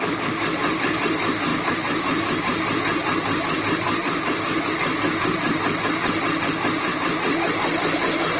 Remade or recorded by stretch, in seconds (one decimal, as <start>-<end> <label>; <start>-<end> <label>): 0.0-1.5 recorded; 1.5-4.7 remade; 4.7-5.2 recorded; 5.2-8.4 remade